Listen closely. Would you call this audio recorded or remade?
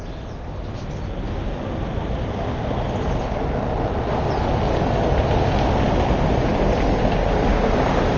recorded